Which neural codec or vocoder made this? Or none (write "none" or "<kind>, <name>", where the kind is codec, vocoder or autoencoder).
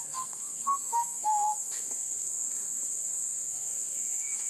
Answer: codec, SNAC